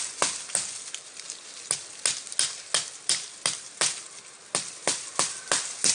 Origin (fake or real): real